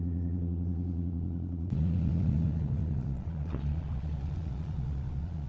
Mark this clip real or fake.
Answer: fake